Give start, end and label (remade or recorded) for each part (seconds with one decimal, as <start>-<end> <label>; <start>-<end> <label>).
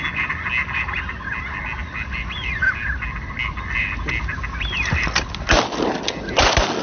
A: 0.0-6.8 recorded